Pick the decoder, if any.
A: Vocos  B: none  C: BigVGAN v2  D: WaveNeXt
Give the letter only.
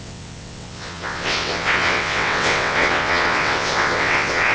D